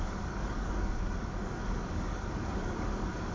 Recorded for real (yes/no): no